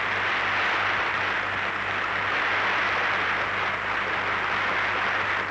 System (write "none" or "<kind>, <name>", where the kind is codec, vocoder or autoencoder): none